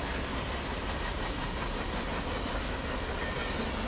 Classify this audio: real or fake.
real